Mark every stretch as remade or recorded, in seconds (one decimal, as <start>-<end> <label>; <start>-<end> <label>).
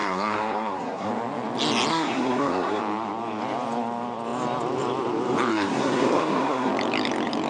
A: 0.0-1.1 remade; 1.1-1.9 recorded; 1.9-2.8 remade; 2.8-5.5 recorded; 5.5-6.7 remade; 6.7-7.5 recorded